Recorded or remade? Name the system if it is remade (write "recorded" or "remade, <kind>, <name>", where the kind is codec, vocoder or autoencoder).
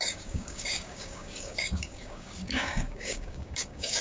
remade, codec, DAC